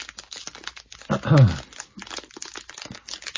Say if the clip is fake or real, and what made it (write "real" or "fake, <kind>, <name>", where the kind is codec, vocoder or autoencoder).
real